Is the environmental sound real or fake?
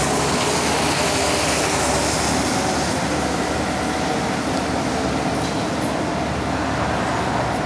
real